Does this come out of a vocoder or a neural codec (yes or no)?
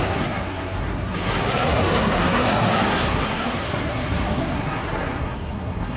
yes